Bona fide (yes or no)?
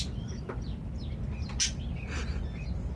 yes